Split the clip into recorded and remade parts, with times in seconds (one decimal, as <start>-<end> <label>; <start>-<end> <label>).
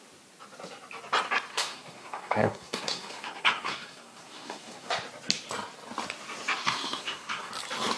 0.0-1.5 recorded; 1.5-4.9 remade; 4.9-6.6 recorded; 6.6-7.5 remade; 7.5-8.0 recorded